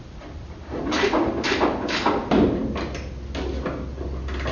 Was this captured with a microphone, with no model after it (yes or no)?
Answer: yes